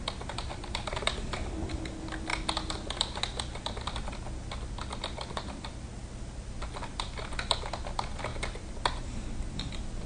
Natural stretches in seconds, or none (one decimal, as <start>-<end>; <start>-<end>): 0.0-10.1